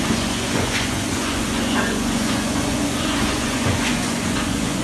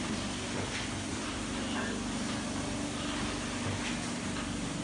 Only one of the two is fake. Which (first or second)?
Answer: first